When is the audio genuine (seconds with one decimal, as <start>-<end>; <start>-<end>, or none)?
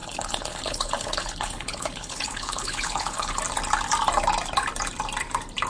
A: 3.4-5.7